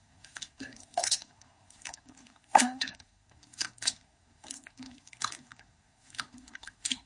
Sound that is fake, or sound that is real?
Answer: fake